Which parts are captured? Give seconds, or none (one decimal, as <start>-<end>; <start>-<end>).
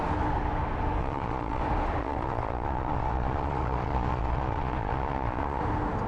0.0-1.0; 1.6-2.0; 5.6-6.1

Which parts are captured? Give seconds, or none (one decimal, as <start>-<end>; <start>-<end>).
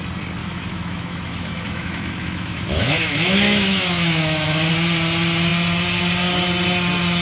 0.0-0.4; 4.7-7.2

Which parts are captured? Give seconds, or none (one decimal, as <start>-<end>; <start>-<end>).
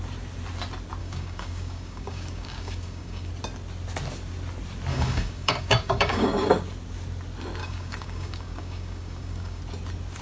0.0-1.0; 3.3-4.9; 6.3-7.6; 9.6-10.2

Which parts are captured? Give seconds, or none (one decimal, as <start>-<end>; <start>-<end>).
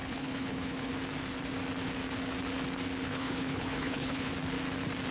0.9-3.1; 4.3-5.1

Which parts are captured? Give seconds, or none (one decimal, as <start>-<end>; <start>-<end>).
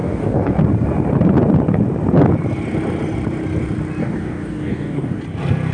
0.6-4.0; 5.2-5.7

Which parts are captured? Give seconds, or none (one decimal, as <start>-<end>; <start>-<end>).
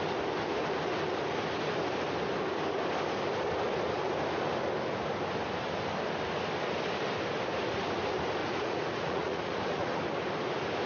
0.0-8.4; 10.0-10.9